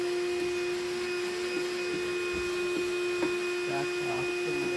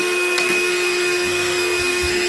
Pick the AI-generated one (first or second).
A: second